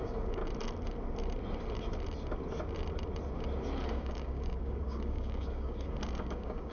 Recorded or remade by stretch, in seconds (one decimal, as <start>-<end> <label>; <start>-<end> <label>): 0.0-0.4 remade; 0.4-3.9 recorded; 3.9-6.7 remade